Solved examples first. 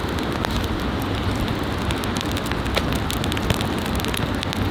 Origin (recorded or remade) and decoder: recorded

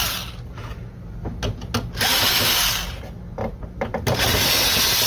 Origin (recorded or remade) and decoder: recorded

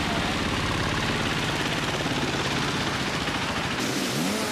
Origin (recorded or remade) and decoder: recorded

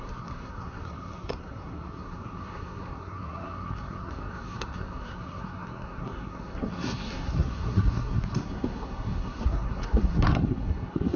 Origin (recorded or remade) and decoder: remade, codec, SNAC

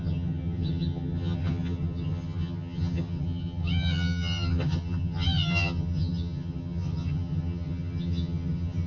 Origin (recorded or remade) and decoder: remade, vocoder, HiFi-GAN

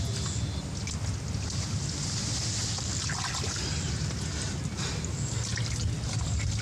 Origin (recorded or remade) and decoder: recorded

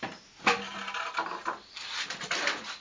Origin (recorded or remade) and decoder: recorded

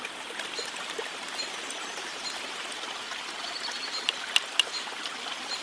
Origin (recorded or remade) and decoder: recorded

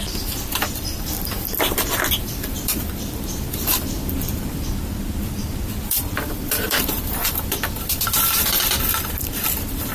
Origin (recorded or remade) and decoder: remade, vocoder, BigVGAN v2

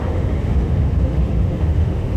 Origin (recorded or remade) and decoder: remade, autoencoder, DAC-VAE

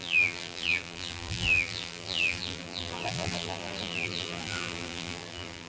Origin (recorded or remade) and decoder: remade, vocoder, BigVGAN v2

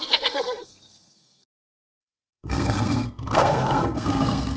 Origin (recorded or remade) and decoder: remade, codec, SNAC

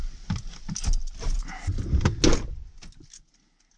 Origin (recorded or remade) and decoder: recorded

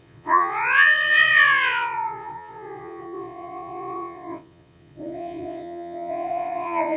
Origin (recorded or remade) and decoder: remade, vocoder, Vocos